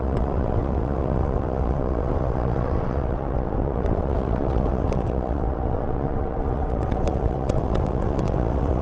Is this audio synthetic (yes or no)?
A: yes